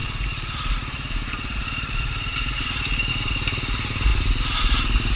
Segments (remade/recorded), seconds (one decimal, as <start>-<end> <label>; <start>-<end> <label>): 0.0-4.1 remade; 4.1-5.2 recorded